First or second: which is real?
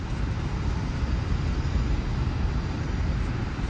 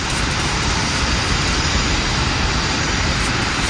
first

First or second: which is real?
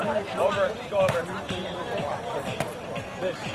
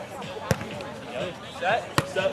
second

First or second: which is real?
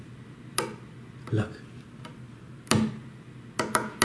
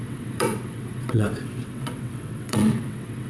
first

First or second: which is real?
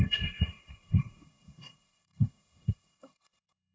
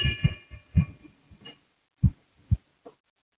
second